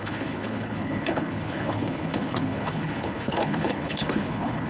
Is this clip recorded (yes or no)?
no